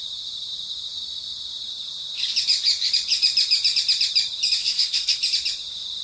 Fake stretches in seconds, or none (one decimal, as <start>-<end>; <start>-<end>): 4.6-5.2